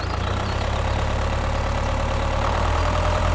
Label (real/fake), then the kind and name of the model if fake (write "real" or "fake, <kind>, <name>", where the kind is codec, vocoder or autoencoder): fake, vocoder, BigVGAN v2